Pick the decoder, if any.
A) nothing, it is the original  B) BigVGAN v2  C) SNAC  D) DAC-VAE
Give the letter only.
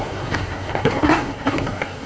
C